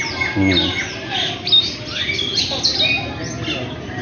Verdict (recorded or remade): recorded